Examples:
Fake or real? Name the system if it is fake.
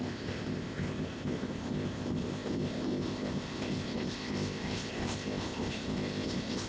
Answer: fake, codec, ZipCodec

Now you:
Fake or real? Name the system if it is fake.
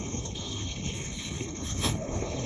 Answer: fake, codec, HILCodec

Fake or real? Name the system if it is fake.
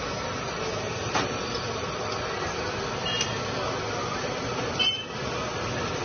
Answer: real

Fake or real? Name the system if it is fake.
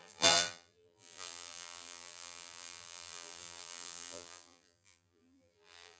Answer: fake, vocoder, BigVGAN v2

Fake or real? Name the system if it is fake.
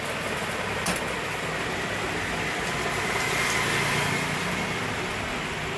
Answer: real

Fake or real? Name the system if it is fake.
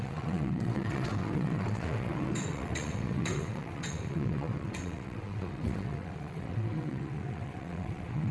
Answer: fake, vocoder, WaveNeXt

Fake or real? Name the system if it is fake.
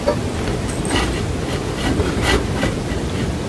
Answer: real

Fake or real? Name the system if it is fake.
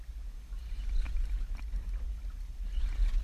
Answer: real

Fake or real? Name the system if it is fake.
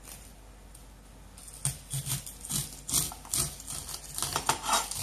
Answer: real